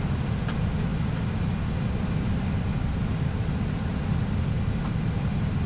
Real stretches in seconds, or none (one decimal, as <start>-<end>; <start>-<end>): 0.0-5.7